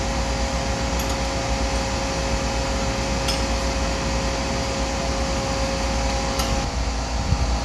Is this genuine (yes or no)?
yes